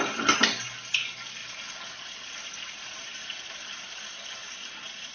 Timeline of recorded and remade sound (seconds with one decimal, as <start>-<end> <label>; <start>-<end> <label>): 0.0-4.4 recorded; 4.4-5.1 remade